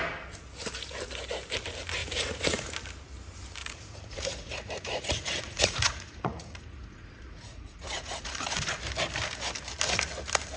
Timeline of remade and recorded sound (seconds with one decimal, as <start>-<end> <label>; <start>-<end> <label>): 0.0-2.0 recorded; 2.0-2.7 remade; 2.7-3.6 recorded; 3.6-8.8 remade; 8.8-10.6 recorded